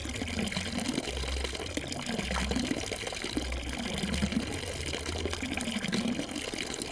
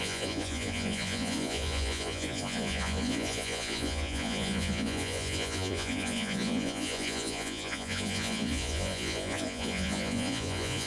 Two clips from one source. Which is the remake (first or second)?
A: second